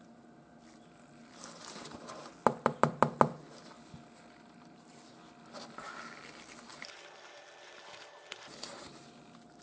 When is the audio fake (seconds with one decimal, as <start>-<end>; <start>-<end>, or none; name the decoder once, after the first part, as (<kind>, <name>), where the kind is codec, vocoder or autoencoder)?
none